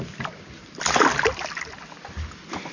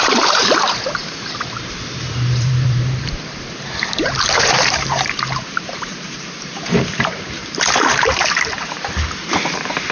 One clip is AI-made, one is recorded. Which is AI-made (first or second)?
second